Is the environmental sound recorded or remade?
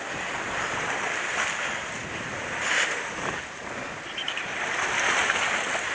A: recorded